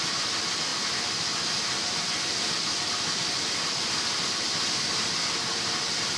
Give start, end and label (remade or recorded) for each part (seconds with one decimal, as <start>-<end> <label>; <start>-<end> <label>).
0.0-6.2 recorded

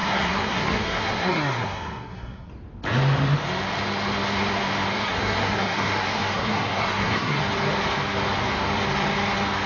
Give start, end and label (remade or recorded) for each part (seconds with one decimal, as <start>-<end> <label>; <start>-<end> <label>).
0.0-2.5 remade; 2.5-5.0 recorded; 5.0-7.4 remade; 7.4-9.7 recorded

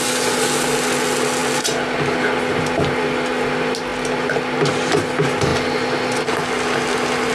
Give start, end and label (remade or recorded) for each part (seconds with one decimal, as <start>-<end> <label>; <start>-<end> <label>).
0.0-7.3 recorded

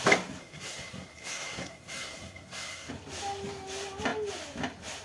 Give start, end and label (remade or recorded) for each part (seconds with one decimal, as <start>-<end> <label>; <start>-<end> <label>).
0.0-0.4 recorded; 0.4-2.9 remade; 2.9-5.0 recorded